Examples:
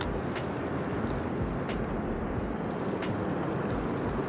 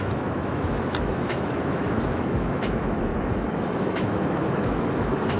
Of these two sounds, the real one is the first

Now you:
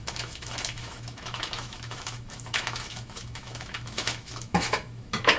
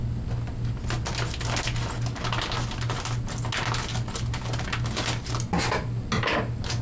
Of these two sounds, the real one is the second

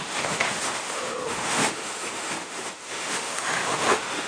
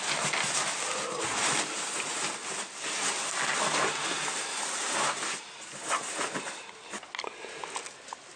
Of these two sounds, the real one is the second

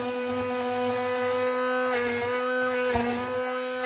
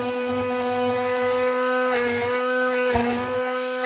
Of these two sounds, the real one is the first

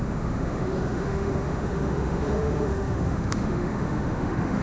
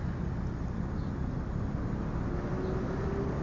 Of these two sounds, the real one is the second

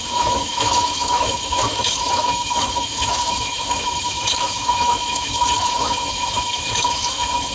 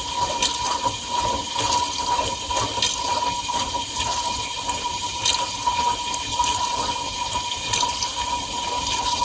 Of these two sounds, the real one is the second